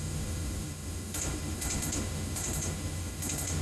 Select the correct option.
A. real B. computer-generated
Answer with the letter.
B